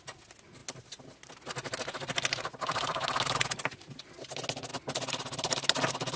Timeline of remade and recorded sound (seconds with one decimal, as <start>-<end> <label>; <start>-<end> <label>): 0.0-6.2 recorded